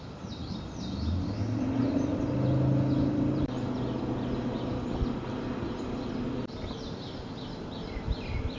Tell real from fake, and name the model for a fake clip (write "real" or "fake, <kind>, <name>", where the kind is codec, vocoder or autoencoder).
real